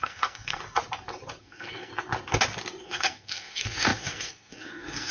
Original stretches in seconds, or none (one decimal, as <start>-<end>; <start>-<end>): 0.6-1.4; 1.9-2.8

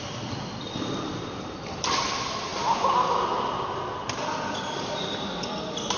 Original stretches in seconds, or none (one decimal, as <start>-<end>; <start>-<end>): 0.0-6.0